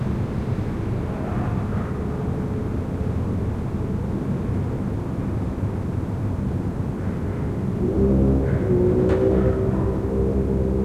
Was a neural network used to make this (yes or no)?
no